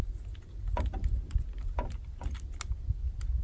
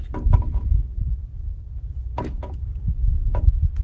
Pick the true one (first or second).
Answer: first